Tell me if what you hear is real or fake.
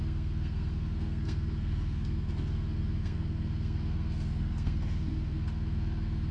fake